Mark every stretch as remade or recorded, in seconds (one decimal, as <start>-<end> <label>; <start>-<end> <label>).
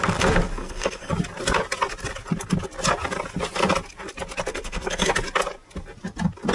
0.0-0.6 recorded; 0.6-1.1 remade; 1.1-4.5 recorded; 4.5-5.1 remade; 5.1-6.5 recorded